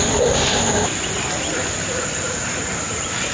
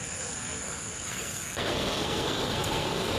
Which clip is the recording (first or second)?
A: first